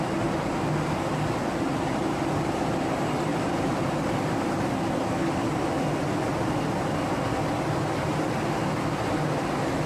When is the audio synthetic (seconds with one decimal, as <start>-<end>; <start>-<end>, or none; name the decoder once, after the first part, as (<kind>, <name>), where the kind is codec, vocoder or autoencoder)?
3.3-4.3 (vocoder, BigVGAN v2)